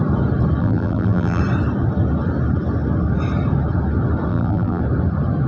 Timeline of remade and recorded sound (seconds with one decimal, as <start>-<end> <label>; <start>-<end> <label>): 0.0-0.6 recorded; 0.6-1.4 remade; 1.4-4.3 recorded; 4.3-4.8 remade; 4.8-5.5 recorded